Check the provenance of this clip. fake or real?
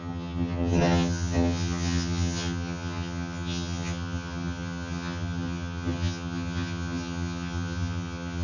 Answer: fake